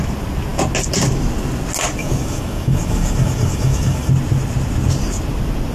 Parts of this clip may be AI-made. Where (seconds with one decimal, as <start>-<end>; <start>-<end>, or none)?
2.0-4.1

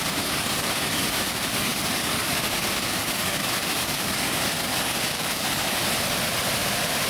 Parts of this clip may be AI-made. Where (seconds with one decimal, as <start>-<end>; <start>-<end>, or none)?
0.0-5.8

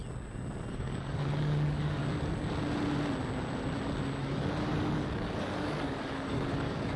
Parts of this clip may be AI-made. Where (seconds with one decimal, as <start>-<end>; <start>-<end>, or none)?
0.7-2.0; 4.2-7.0

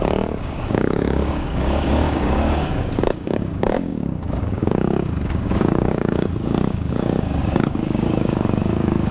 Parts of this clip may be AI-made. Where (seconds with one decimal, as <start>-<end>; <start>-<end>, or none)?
0.0-9.1

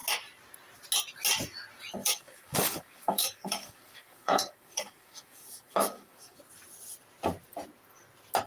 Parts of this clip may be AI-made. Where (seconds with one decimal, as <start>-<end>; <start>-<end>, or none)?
2.0-6.4

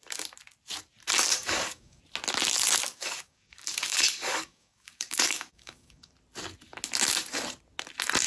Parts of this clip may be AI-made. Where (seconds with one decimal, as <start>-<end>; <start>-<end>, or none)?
1.3-2.0; 2.9-6.1

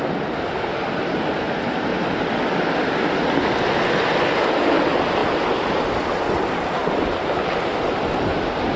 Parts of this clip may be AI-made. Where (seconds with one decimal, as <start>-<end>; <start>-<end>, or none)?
none

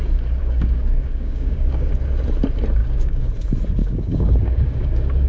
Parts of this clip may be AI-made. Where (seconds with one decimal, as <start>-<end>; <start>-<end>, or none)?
0.4-1.9; 2.8-3.3; 3.8-5.3